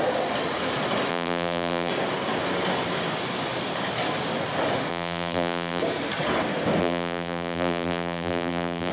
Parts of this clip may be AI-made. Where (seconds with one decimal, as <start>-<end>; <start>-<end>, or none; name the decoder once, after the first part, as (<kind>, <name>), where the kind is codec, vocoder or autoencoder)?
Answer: 1.1-1.9 (vocoder, BigVGAN v2); 4.9-5.8; 6.8-8.9